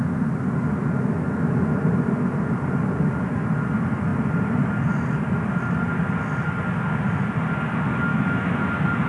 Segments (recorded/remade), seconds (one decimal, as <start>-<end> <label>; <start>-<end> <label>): 0.0-8.1 recorded; 8.1-8.7 remade; 8.7-9.1 recorded